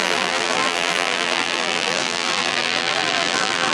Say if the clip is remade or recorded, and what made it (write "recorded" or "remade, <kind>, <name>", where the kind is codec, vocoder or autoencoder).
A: remade, vocoder, BigVGAN v2